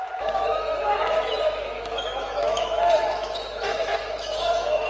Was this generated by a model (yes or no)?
yes